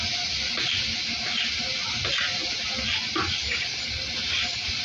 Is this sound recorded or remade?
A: recorded